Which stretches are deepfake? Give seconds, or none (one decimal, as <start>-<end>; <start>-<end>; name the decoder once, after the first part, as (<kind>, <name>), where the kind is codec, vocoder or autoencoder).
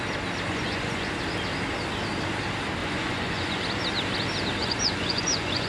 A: 0.5-1.1 (vocoder, Vocos); 2.8-3.6; 4.6-5.7